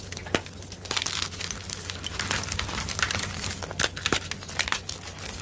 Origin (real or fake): real